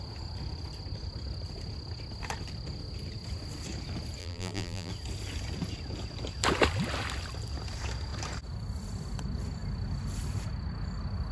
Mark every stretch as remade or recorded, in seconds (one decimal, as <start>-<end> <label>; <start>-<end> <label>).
0.0-4.2 recorded; 4.2-4.9 remade; 4.9-11.3 recorded